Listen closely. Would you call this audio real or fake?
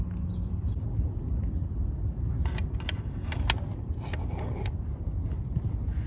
real